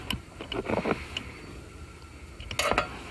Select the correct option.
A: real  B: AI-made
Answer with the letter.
A